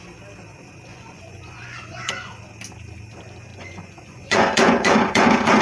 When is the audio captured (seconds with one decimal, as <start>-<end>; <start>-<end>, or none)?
0.0-0.9; 2.3-3.5